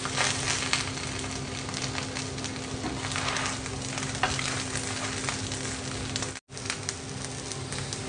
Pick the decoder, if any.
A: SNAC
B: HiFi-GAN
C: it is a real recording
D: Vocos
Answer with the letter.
C